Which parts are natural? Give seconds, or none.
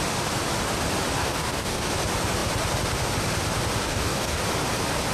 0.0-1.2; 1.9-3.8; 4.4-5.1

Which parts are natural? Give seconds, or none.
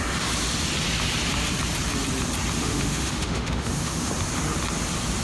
0.0-2.6; 4.1-5.2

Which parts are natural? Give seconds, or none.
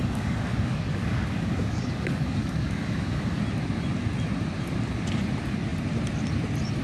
3.4-6.8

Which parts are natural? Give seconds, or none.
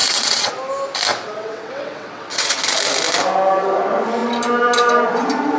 0.5-1.1; 2.6-5.6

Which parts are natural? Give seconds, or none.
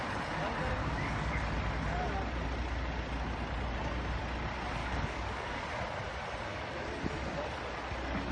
0.0-0.8; 1.4-4.8; 5.6-6.5; 7.0-8.3